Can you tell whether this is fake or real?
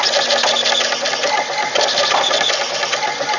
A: real